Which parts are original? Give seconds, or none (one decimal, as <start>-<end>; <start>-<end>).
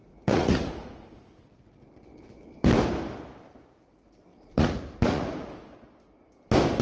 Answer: 1.4-4.3; 5.5-6.8